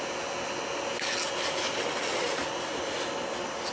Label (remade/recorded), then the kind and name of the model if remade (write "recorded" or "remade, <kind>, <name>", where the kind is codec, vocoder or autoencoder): recorded